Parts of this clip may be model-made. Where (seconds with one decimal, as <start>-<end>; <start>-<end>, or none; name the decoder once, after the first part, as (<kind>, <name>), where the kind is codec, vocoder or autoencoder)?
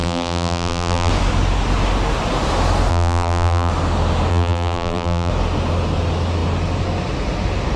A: 0.0-1.1 (vocoder, BigVGAN v2); 2.9-3.7; 4.3-5.3